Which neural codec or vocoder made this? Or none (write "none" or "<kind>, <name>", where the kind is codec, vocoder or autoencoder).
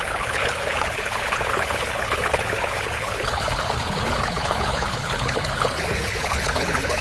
codec, HILCodec